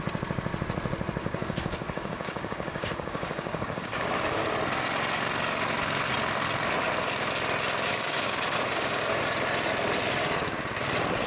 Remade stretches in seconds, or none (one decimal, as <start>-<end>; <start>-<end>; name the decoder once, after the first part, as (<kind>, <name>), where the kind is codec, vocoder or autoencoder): 1.2-4.4 (codec, DAC); 7.9-9.2